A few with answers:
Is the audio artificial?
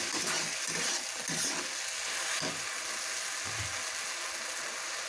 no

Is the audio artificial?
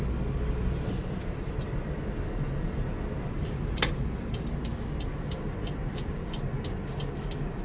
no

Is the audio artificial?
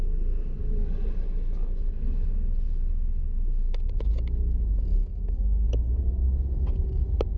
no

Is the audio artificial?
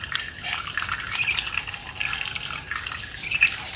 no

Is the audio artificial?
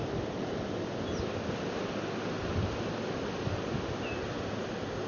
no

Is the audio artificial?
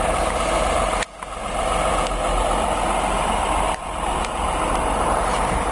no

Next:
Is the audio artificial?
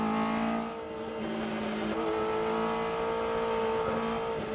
no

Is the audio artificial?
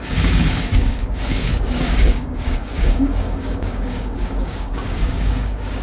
yes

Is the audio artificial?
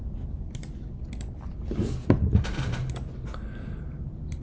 no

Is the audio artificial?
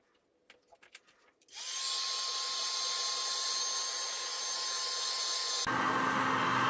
no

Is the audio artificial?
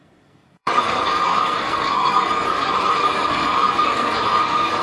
yes